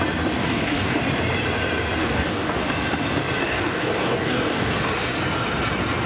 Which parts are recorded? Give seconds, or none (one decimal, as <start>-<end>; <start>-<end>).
0.0-0.4; 1.0-2.0; 2.7-3.4; 4.7-6.1